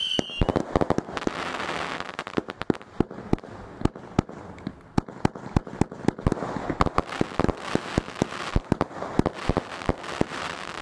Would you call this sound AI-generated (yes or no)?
no